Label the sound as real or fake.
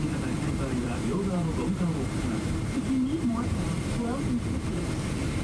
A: fake